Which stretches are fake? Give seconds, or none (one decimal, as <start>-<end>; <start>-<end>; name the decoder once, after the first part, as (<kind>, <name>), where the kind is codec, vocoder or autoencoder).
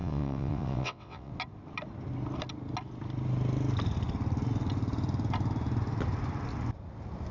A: 0.0-1.3 (vocoder, WaveNeXt)